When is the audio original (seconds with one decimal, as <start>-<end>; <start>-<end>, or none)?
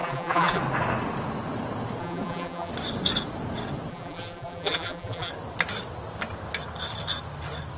0.6-2.0; 2.7-3.9; 5.3-7.8